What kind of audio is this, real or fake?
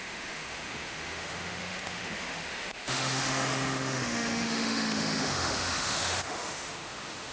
fake